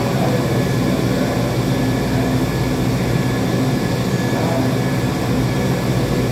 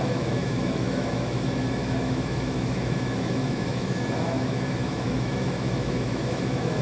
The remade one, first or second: second